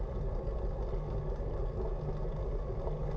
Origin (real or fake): real